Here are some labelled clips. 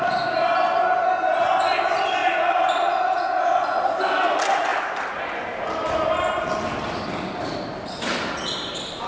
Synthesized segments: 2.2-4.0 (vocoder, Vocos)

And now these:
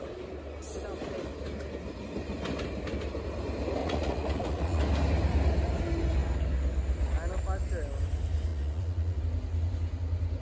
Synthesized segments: 3.8-4.8 (vocoder, Vocos); 8.5-9.2

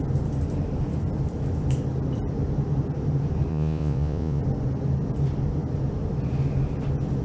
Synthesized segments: 3.5-4.4 (vocoder, Vocos)

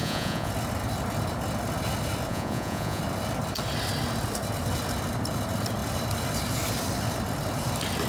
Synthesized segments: 0.0-0.5 (vocoder, Vocos); 2.3-3.0